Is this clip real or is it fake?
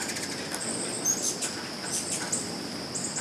real